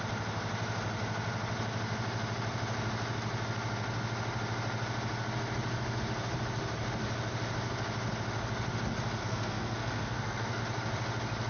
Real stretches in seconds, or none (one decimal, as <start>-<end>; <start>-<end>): 0.0-9.2; 10.6-11.5